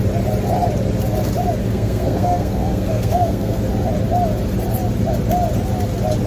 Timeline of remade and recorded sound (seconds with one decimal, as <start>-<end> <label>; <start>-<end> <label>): 0.0-1.6 recorded; 1.6-3.6 remade; 3.6-6.3 recorded